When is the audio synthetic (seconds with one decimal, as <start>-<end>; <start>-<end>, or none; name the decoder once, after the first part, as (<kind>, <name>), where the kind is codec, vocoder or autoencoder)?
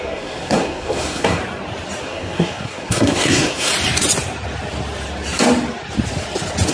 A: 0.0-1.4 (codec, SNAC); 2.0-3.7